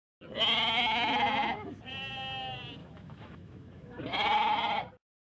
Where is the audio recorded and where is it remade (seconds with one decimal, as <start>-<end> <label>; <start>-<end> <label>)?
0.0-2.8 recorded; 2.8-4.0 remade; 4.0-5.2 recorded